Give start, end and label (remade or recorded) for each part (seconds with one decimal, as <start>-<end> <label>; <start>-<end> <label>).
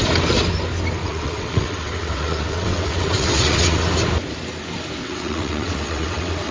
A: 0.0-1.0 recorded; 1.0-3.9 remade; 3.9-5.0 recorded; 5.0-6.5 remade